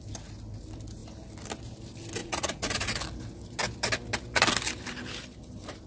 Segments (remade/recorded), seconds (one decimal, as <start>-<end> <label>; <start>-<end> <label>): 0.0-2.2 recorded; 2.2-3.0 remade; 3.0-5.9 recorded